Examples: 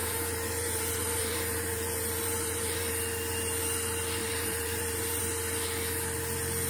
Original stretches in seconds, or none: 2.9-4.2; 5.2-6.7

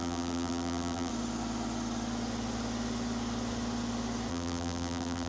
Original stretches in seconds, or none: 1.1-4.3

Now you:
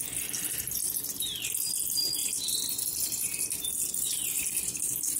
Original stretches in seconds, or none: 0.0-2.2